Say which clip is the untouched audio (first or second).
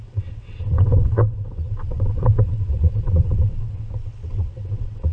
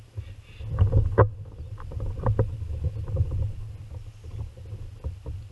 second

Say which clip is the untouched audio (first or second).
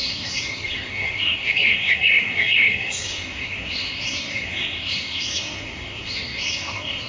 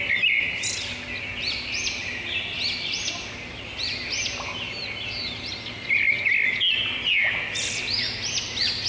second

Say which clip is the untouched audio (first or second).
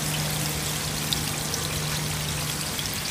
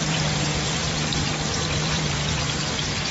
first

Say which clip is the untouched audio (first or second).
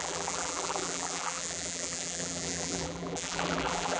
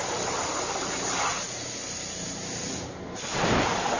second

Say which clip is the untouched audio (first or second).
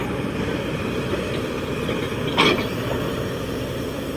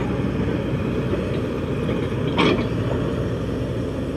second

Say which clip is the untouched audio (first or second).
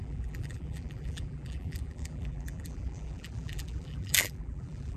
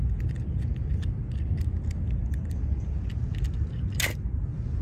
second